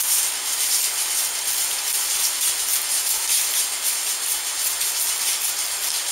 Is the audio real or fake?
real